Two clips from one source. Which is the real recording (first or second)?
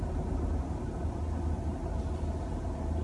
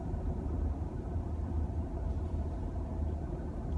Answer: first